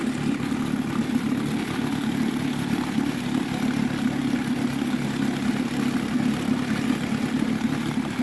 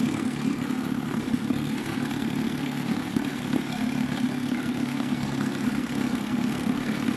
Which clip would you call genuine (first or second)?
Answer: first